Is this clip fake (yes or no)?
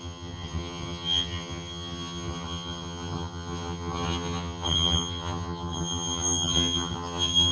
yes